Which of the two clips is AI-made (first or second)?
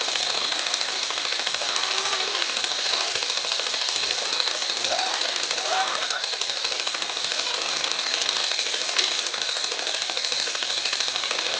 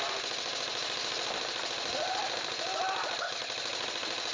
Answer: first